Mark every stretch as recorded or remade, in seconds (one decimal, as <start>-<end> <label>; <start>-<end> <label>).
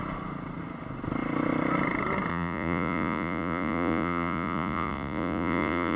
0.0-2.3 recorded; 2.3-6.0 remade